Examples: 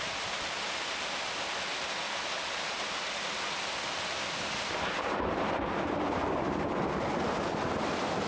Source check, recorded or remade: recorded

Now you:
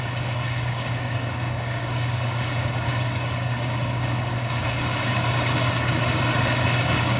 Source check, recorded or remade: remade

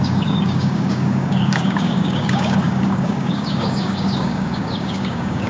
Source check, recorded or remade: remade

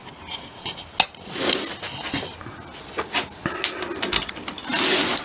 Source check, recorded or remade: recorded